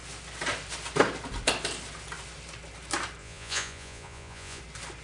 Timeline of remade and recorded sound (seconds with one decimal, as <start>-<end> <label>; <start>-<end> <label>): 0.0-3.2 recorded; 3.2-4.6 remade; 4.6-5.0 recorded